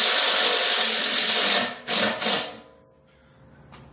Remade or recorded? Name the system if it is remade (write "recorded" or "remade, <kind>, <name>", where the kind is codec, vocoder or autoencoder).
recorded